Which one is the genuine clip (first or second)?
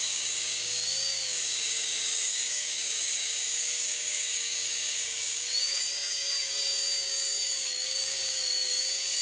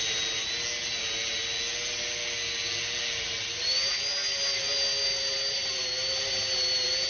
second